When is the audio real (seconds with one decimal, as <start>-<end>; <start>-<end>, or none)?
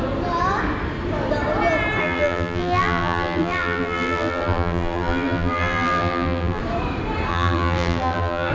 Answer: 0.0-2.0; 6.6-7.3